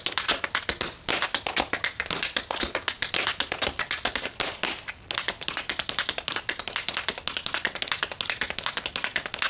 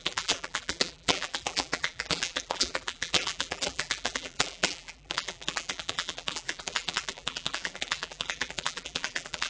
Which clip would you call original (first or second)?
first